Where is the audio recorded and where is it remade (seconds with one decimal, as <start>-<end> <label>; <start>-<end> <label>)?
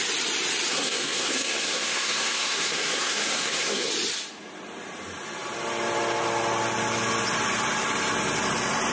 0.0-0.7 recorded; 0.7-3.9 remade; 3.9-8.9 recorded